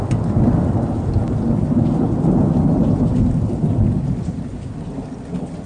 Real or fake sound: real